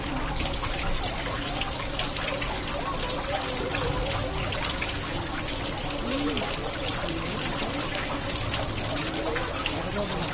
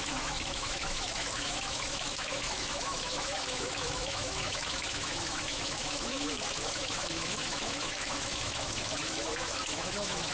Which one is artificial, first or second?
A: second